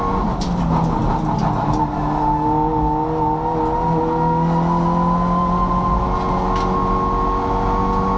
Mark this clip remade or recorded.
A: recorded